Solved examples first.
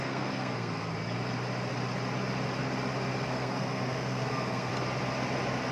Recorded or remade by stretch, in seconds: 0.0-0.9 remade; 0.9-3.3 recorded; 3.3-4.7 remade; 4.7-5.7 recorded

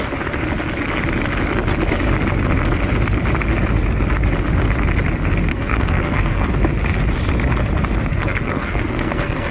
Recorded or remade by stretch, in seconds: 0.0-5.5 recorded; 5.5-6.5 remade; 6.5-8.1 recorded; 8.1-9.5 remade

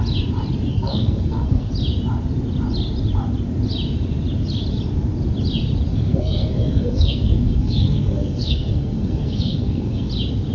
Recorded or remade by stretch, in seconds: 0.0-0.7 recorded; 0.7-1.7 remade; 1.7-5.9 recorded; 5.9-10.1 remade; 10.1-10.5 recorded